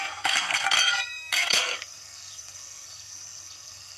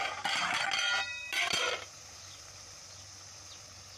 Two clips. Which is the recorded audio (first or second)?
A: second